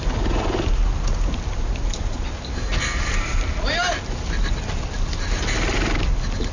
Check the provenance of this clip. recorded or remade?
recorded